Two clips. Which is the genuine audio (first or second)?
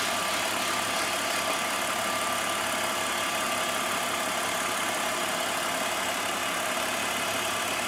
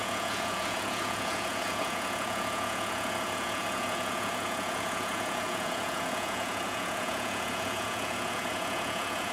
first